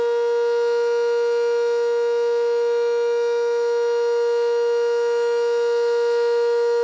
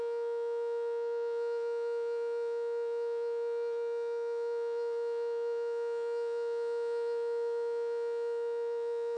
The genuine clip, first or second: first